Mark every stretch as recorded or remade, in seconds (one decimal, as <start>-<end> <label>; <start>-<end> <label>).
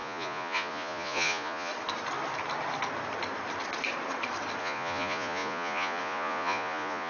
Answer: 0.0-1.7 remade; 1.7-4.6 recorded; 4.6-7.1 remade